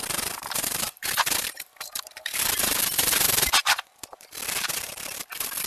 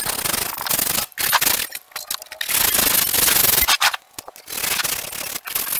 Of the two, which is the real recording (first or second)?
second